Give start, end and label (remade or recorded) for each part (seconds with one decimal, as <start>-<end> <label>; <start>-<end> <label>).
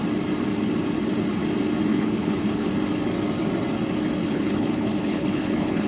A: 0.0-1.9 recorded; 1.9-2.7 remade; 2.7-4.2 recorded; 4.2-5.9 remade